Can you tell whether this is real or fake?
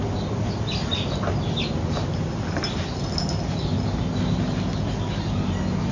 real